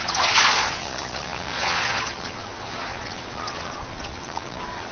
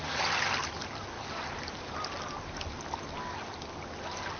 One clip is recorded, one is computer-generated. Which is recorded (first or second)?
second